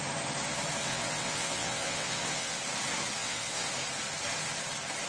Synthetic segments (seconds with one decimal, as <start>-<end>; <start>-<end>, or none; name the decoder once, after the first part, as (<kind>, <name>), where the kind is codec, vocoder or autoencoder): 0.8-2.6 (vocoder, WaveNeXt); 3.2-3.7